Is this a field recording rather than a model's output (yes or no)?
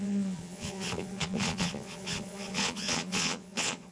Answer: no